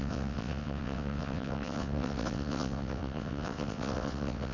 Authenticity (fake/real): fake